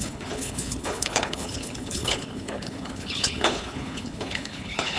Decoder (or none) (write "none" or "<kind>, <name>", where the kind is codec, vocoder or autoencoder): codec, HILCodec